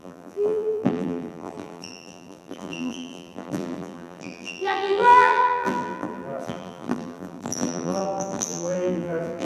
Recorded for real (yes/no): no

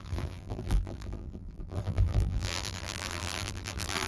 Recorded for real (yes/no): no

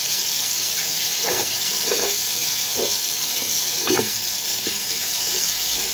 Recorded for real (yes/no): no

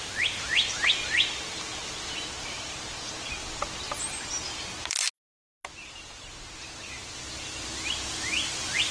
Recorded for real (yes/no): yes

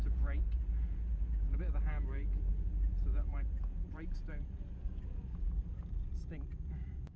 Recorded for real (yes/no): no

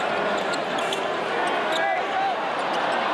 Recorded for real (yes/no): yes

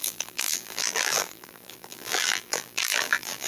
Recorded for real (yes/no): no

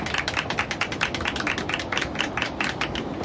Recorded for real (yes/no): no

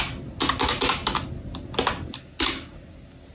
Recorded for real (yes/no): yes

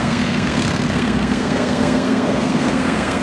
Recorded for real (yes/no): no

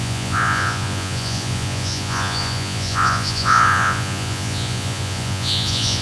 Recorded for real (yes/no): no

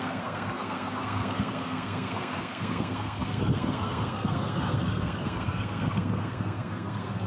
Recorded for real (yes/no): no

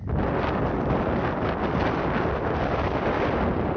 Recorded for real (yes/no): yes